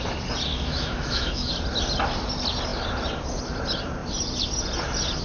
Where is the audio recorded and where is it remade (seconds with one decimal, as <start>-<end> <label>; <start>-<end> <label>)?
0.0-0.5 recorded; 0.5-1.5 remade; 1.5-5.2 recorded